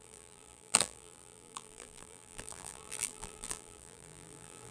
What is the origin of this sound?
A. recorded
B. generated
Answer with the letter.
B